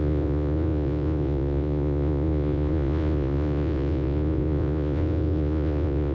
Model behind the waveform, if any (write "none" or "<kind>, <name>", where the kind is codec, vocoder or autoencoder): vocoder, Vocos